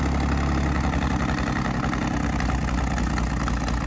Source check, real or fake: real